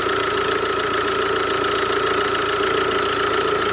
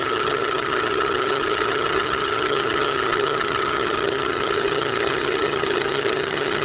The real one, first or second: first